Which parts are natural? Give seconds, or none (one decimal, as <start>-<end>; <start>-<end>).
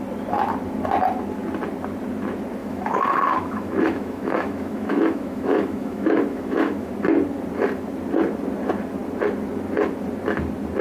0.0-2.6; 6.9-10.8